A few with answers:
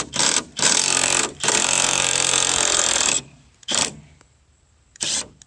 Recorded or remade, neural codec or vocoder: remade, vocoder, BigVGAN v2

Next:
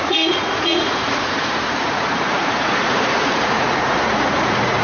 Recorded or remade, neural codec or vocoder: remade, vocoder, Vocos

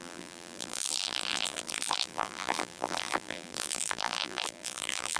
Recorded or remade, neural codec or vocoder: remade, vocoder, BigVGAN v2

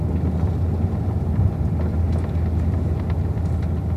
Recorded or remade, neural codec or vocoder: recorded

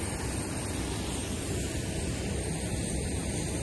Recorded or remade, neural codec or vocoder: recorded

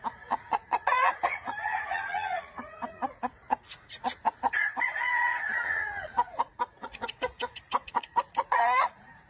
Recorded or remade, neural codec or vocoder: remade, vocoder, Vocos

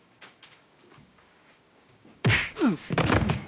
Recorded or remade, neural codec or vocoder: remade, codec, DAC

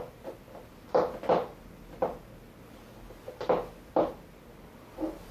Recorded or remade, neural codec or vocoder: recorded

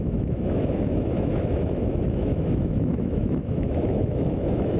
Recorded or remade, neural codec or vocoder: remade, autoencoder, DAC-VAE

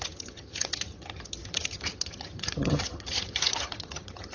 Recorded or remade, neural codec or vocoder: remade, vocoder, HiFi-GAN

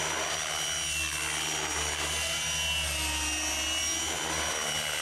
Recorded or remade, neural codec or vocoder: recorded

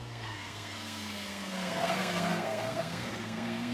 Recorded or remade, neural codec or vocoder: remade, codec, SNAC